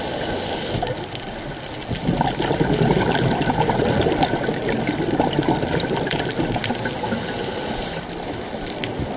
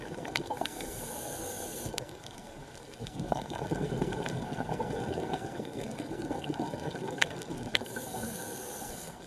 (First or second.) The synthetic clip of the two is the second